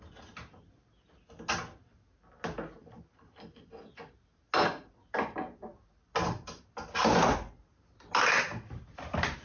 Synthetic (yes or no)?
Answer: no